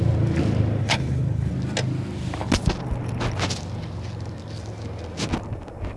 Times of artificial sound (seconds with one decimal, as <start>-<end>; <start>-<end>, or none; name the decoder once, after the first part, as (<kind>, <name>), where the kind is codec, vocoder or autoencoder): 0.8-1.5 (codec, HILCodec)